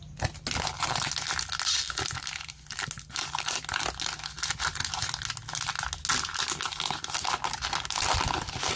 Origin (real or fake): real